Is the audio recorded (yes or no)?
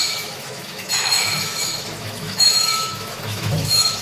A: no